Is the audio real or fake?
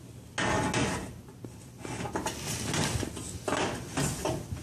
real